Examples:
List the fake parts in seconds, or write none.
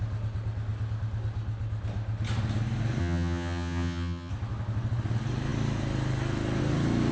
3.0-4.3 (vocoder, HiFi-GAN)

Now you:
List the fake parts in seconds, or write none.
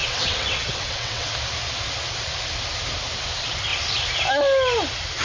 0.0-1.3 (vocoder, WaveNeXt)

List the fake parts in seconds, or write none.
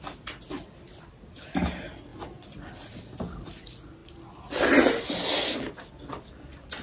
none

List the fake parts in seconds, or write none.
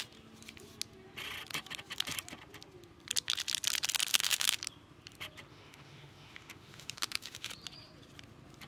4.1-4.6 (autoencoder, DAC-VAE); 5.5-7.5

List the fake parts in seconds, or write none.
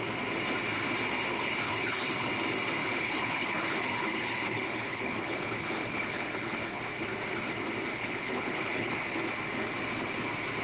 1.3-2.3 (codec, HILCodec); 2.8-6.8; 7.9-8.9